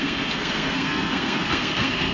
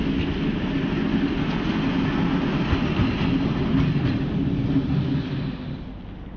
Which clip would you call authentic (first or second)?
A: second